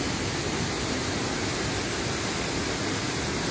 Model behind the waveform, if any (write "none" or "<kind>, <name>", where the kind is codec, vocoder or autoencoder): none